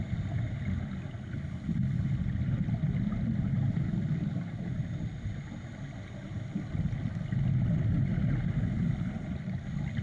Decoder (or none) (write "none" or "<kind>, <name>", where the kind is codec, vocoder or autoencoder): none